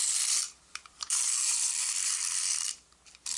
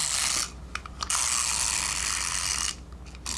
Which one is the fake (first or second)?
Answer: first